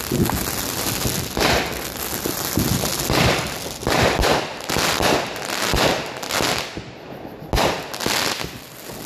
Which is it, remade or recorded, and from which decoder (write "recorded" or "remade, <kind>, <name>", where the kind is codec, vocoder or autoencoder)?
recorded